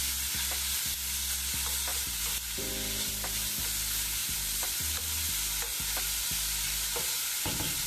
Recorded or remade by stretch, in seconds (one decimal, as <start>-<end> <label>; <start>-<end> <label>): 0.0-1.9 recorded; 1.9-2.7 remade; 2.7-4.2 recorded; 4.2-5.0 remade; 5.0-7.9 recorded